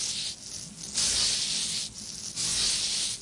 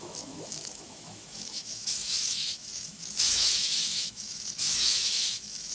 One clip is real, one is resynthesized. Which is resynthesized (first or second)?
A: second